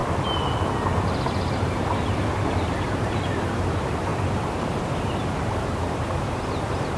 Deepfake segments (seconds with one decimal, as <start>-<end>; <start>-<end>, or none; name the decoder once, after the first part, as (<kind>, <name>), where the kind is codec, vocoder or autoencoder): 1.5-4.1 (vocoder, BigVGAN v2); 6.1-7.0